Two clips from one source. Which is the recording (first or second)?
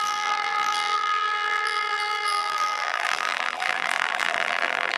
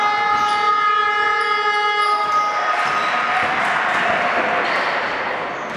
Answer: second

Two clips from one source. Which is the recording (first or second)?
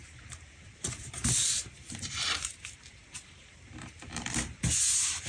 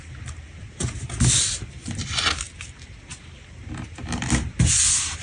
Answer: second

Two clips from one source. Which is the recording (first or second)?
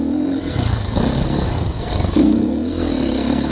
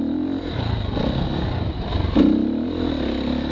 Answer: second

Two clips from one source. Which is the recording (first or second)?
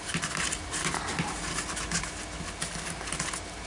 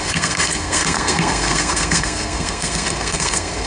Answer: first